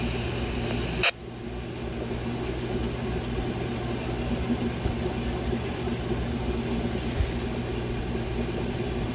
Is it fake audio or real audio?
real